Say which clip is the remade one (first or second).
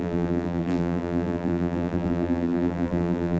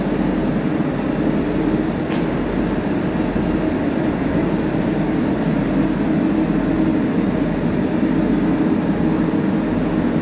first